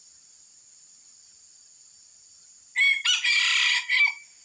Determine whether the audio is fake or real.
real